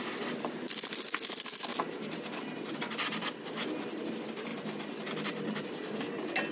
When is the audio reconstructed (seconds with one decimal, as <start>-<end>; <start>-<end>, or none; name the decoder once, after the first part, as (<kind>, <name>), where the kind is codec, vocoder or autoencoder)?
1.7-3.6 (vocoder, BigVGAN v2); 4.5-6.0